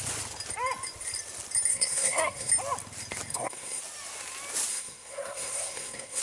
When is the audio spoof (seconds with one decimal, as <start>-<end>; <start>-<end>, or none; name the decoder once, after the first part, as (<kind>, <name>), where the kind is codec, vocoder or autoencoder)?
1.7-2.5 (codec, SNAC); 3.3-3.8; 4.7-6.2